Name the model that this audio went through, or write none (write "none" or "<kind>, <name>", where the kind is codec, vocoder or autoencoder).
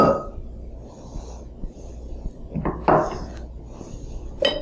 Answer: none